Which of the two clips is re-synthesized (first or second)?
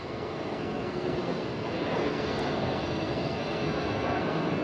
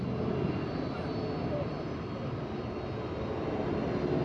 first